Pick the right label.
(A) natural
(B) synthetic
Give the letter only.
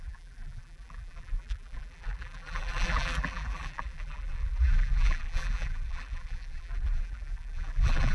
B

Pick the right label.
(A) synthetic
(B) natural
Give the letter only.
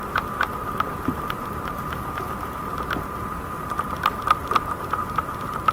A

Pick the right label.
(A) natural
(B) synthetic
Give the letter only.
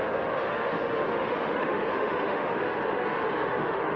B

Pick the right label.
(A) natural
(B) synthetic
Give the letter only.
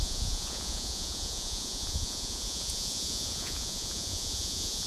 B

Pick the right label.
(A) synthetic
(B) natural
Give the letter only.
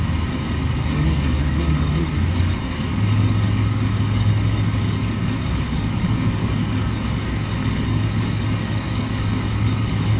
A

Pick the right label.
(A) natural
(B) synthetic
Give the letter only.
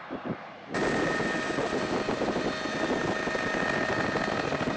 A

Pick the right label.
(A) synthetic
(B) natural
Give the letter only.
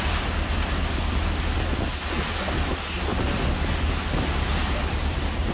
B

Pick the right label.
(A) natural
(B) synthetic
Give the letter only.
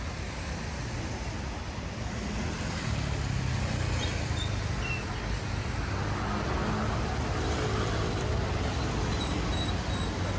A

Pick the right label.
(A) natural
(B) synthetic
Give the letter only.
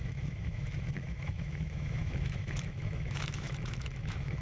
B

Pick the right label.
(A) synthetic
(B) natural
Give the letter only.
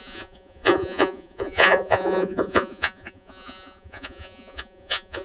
A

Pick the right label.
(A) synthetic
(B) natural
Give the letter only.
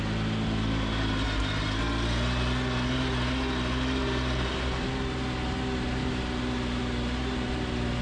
B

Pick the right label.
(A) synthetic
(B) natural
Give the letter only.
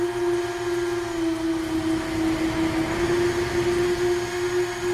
B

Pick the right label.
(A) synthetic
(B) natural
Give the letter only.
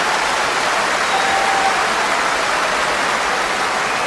B